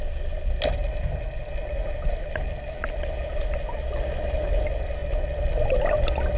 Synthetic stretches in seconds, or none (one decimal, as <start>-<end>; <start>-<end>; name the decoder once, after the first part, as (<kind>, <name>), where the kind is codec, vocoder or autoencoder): none